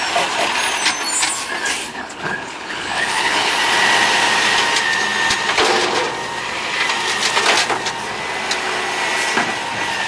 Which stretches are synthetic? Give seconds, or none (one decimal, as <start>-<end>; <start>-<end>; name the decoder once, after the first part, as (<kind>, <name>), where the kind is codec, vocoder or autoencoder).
1.8-3.5 (codec, HILCodec)